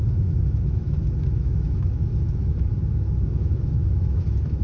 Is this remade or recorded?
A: remade